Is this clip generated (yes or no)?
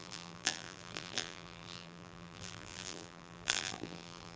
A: yes